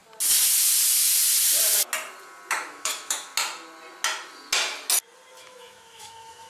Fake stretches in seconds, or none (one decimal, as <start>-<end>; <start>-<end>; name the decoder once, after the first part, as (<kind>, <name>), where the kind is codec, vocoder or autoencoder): 2.5-3.3 (autoencoder, DAC-VAE); 5.4-6.5